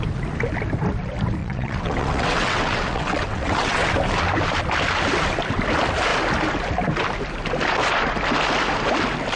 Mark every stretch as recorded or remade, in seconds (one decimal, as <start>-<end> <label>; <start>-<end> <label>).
0.0-1.4 recorded; 1.4-3.9 remade; 3.9-9.4 recorded